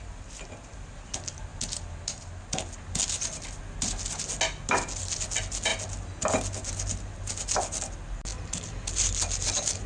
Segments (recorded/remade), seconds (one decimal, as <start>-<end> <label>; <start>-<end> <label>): 0.0-9.9 recorded